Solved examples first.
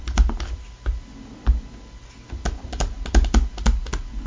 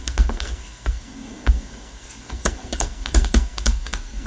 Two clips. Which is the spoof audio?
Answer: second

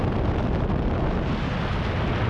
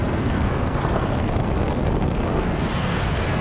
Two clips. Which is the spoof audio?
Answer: second